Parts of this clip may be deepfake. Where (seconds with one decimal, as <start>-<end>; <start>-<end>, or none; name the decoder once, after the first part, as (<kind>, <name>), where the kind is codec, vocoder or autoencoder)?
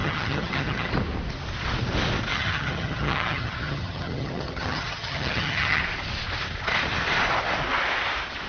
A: 0.0-0.9 (vocoder, HiFi-GAN); 2.3-5.8